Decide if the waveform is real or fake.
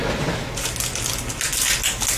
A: real